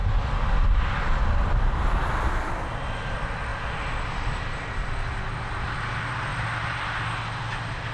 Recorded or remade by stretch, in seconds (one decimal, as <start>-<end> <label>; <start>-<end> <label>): 0.0-0.8 remade; 0.8-3.5 recorded; 3.5-5.2 remade; 5.2-7.9 recorded